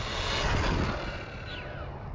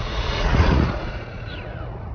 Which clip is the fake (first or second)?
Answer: second